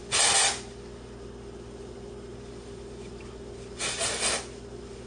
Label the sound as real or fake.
real